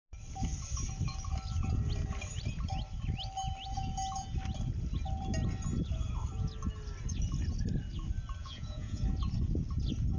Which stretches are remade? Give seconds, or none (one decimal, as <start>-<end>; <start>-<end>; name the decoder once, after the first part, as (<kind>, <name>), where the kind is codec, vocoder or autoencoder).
8.4-9.0 (vocoder, Vocos)